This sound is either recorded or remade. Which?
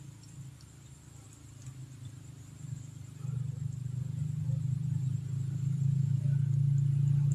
recorded